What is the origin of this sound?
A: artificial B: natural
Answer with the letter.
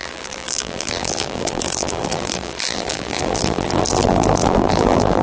A